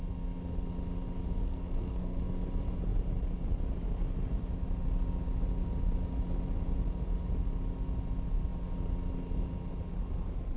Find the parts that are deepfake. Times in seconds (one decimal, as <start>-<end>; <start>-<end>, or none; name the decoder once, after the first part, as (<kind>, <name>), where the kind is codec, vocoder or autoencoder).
1.4-2.2 (codec, SNAC)